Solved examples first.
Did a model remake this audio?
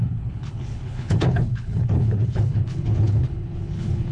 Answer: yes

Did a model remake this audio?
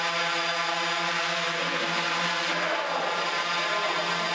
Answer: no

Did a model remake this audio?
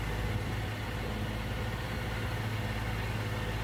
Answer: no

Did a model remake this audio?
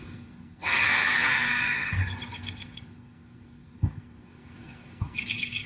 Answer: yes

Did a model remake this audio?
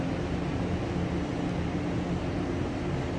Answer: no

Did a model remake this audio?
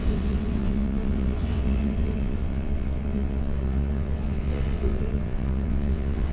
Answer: yes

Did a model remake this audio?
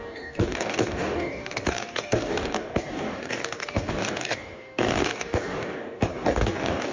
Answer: yes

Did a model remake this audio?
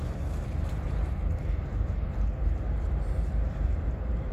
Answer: yes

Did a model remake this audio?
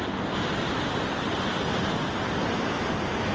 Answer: no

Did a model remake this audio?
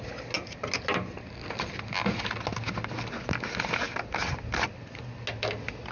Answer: no